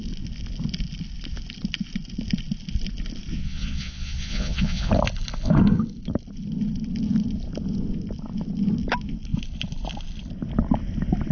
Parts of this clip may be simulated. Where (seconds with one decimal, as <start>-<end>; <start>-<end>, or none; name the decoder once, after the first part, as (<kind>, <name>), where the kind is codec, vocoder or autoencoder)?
3.3-4.9 (vocoder, Vocos)